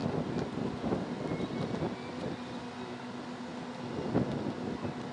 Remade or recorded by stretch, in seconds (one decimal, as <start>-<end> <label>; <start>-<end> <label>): 0.0-5.1 recorded